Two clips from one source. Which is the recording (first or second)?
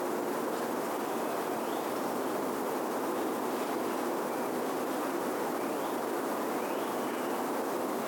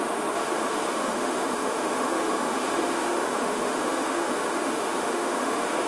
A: first